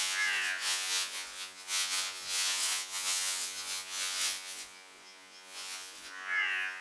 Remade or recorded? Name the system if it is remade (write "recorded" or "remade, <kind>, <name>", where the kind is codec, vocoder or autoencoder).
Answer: remade, vocoder, Vocos